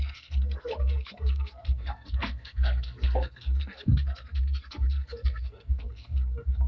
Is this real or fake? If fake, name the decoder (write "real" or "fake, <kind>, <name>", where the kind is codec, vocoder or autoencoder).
fake, codec, SNAC